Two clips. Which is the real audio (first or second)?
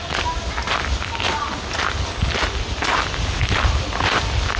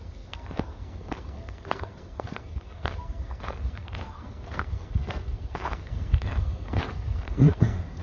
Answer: first